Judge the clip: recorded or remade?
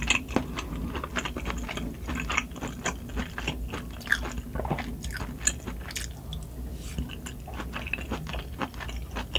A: recorded